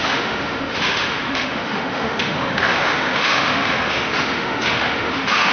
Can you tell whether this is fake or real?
fake